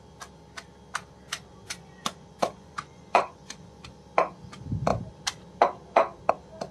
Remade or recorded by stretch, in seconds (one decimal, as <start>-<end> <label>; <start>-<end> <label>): 0.0-1.5 recorded; 1.5-4.0 remade; 4.0-6.7 recorded

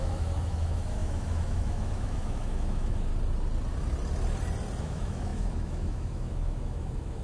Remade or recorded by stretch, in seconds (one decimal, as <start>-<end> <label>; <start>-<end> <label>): 0.0-3.1 remade; 3.1-4.8 recorded; 4.8-7.2 remade

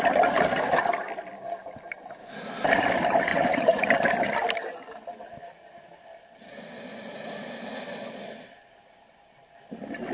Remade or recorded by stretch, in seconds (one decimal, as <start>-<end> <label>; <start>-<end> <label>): 0.0-3.3 recorded; 3.3-3.9 remade; 3.9-10.1 recorded

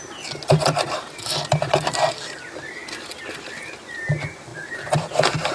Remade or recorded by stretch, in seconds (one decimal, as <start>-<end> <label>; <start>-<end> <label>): 0.0-5.5 recorded

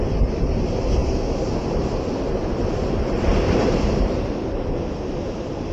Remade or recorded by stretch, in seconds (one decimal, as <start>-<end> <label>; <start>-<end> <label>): 0.0-3.3 recorded; 3.3-4.5 remade; 4.5-5.7 recorded

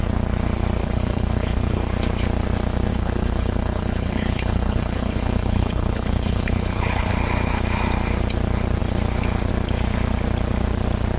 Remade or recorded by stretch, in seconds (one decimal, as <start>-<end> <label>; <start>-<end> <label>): 0.0-0.8 recorded; 0.8-1.9 remade; 1.9-2.9 recorded; 2.9-7.1 remade; 7.1-11.2 recorded

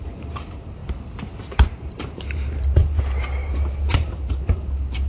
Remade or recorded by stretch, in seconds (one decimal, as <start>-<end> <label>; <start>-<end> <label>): 0.0-0.8 remade; 0.8-1.4 recorded; 1.4-5.1 remade

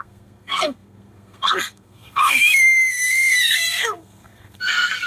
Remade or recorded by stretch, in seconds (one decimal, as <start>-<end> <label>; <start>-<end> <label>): 0.0-5.1 remade